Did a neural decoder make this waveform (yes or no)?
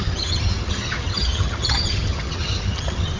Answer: yes